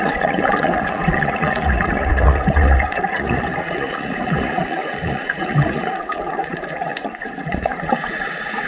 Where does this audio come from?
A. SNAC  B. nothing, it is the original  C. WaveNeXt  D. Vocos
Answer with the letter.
D